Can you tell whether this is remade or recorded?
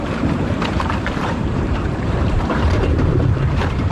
remade